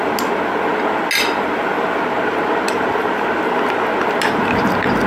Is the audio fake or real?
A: real